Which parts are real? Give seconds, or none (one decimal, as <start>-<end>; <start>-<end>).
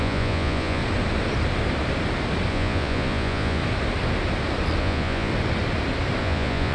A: 0.8-2.5; 3.6-4.8; 5.3-6.2